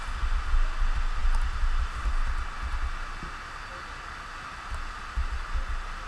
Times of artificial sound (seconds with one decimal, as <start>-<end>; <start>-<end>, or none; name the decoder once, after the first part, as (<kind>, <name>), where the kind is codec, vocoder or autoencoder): none